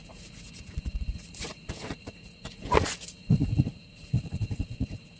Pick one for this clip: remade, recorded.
remade